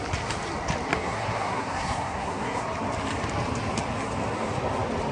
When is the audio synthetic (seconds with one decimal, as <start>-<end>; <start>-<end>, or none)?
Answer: 0.9-2.6